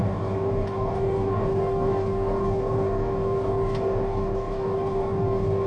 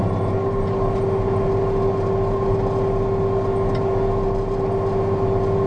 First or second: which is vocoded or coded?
first